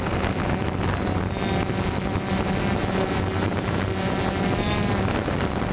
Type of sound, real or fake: real